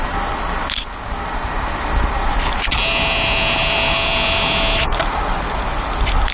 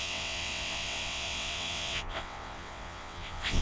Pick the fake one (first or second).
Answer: second